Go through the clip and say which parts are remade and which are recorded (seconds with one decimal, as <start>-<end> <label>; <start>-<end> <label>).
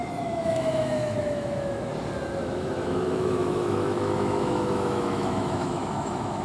0.0-1.9 remade; 1.9-2.4 recorded; 2.4-6.4 remade